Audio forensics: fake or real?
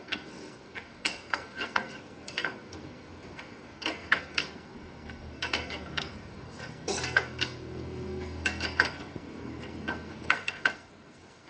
fake